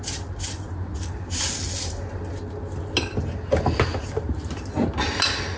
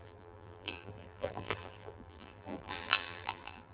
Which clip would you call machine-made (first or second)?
second